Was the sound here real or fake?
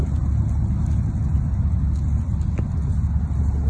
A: real